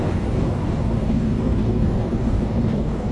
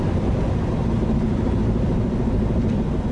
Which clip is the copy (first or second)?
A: first